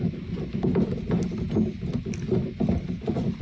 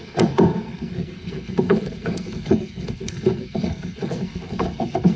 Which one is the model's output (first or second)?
second